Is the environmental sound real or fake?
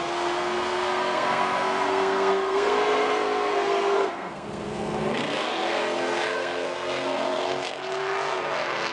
fake